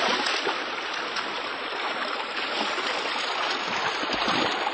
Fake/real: real